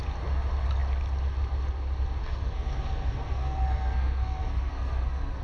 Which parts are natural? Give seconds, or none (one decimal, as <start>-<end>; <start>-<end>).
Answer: 0.0-2.2